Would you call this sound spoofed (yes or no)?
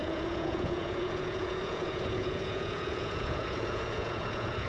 yes